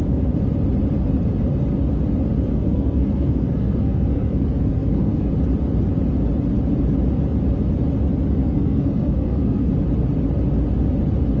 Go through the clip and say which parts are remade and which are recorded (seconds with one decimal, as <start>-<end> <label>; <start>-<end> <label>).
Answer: 0.0-2.5 recorded; 2.5-5.3 remade; 5.3-8.4 recorded; 8.4-9.7 remade; 9.7-11.4 recorded